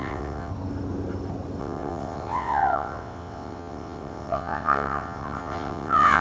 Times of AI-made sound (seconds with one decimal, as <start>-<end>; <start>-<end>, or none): 0.0-0.5; 1.6-6.2